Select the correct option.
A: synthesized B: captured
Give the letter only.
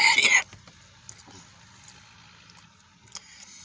B